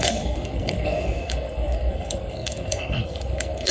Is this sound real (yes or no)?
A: no